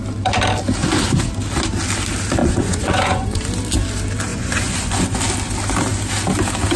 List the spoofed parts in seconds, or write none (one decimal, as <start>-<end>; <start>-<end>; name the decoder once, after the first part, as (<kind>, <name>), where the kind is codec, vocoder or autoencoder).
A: 0.8-1.3 (vocoder, Vocos); 2.4-3.4; 4.3-5.2